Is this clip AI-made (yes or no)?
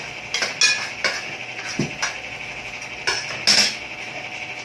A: no